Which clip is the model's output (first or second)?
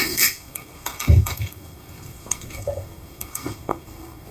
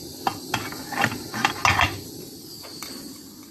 first